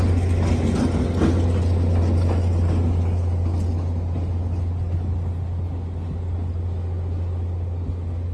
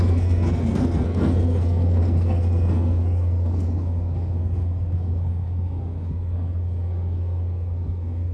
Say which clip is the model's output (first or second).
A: second